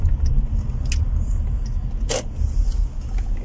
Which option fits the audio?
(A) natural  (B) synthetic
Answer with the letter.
A